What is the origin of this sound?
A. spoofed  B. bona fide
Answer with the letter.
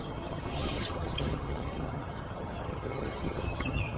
A